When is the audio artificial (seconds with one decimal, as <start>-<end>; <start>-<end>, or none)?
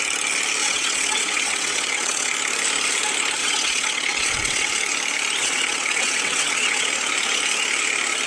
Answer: 0.6-2.3; 3.4-4.7; 5.4-6.9